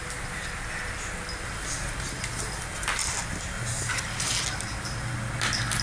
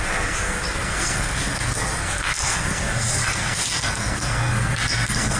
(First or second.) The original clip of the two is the first